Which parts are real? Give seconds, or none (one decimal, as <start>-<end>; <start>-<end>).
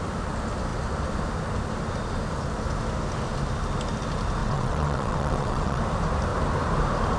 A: 0.0-4.4; 5.8-7.2